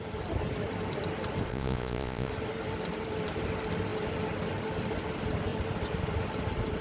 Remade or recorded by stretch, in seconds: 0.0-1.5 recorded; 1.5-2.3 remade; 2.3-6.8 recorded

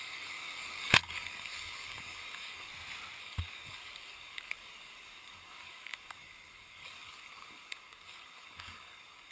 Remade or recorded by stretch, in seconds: 0.0-2.7 remade; 2.7-3.2 recorded; 3.2-9.3 remade

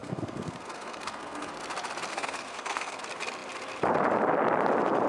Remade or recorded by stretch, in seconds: 0.0-1.5 remade; 1.5-2.1 recorded; 2.1-3.0 remade; 3.0-5.1 recorded

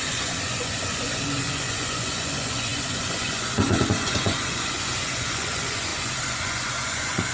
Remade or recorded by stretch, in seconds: 0.0-7.3 remade

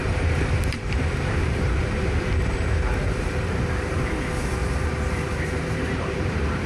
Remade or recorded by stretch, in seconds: 0.0-4.0 remade; 4.0-4.6 recorded; 4.6-6.7 remade